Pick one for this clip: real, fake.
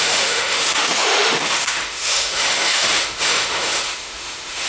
fake